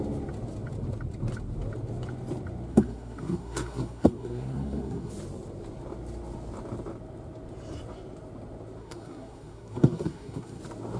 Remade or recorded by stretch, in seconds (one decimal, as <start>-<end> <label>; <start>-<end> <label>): 0.0-2.7 recorded; 2.7-5.1 remade; 5.1-8.8 recorded; 8.8-10.6 remade; 10.6-11.0 recorded